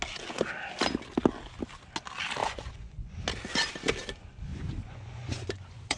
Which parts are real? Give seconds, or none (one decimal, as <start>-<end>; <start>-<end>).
0.0-2.4; 3.2-4.5